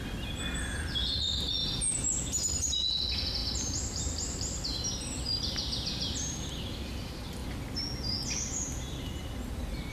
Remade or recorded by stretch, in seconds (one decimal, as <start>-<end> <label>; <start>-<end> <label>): 0.0-1.6 recorded; 1.6-2.1 remade; 2.1-3.4 recorded; 3.4-6.5 remade; 6.5-9.9 recorded